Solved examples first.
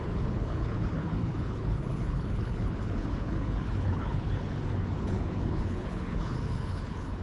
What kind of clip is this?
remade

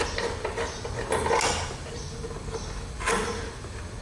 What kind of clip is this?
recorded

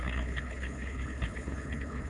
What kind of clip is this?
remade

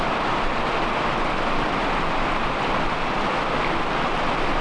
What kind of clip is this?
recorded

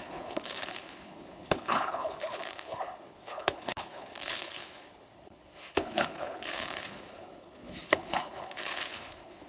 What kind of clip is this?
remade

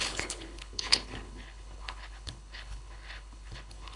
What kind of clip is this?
remade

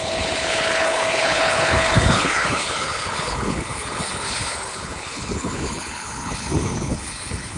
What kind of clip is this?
remade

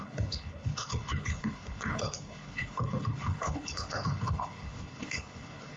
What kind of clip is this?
remade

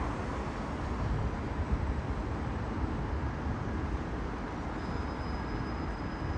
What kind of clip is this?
recorded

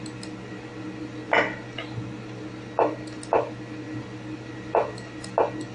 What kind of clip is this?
recorded